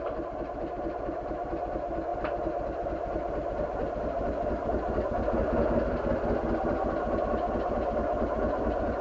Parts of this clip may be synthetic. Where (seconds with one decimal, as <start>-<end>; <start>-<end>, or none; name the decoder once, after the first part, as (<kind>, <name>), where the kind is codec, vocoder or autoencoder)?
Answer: none